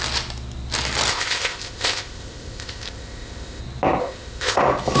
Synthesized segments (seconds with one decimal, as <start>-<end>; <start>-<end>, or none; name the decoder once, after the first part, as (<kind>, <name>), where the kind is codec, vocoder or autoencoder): 1.1-3.6 (codec, ZipCodec); 4.0-4.6